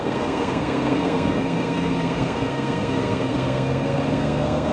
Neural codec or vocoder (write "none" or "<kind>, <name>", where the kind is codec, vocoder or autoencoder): codec, SNAC